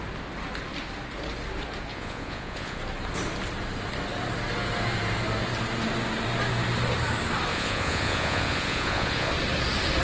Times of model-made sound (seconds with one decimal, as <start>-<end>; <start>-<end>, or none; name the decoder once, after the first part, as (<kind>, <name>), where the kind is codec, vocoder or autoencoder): 1.9-2.8 (vocoder, Vocos); 7.5-9.3